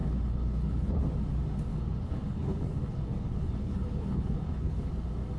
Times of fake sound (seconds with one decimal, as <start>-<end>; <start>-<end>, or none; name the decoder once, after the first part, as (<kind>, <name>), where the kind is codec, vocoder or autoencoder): 0.0-1.0 (codec, HILCodec); 1.7-4.9